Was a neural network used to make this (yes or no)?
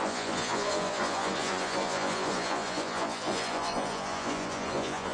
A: yes